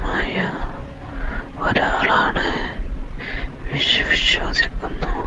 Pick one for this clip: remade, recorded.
recorded